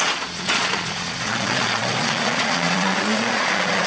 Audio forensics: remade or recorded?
remade